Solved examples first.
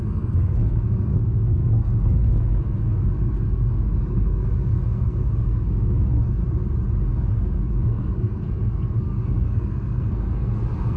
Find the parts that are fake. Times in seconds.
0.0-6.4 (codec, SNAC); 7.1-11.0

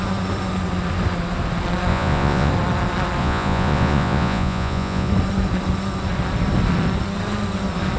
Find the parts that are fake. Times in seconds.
1.9-2.5 (vocoder, Vocos); 3.2-5.1